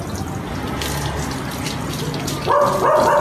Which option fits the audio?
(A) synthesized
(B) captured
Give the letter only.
B